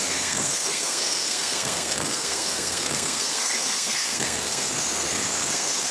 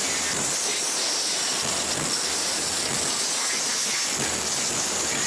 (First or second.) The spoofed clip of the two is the first